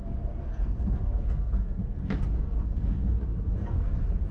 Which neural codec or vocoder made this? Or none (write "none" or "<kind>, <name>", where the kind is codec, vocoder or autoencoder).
codec, SNAC